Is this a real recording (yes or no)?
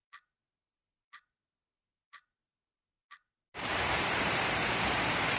no